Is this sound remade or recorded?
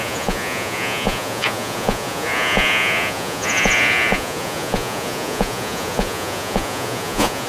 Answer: remade